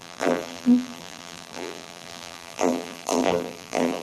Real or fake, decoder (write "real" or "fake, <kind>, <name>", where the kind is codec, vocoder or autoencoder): fake, vocoder, BigVGAN v2